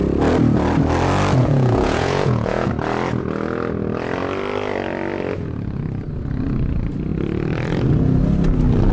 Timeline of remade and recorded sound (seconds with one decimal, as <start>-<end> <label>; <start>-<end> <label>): 0.0-1.4 recorded; 1.4-2.7 remade; 2.7-8.9 recorded